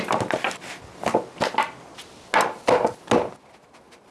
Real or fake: real